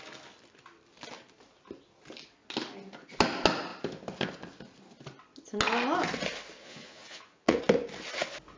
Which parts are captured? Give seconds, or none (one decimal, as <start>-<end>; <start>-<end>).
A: 0.0-6.6; 7.6-8.6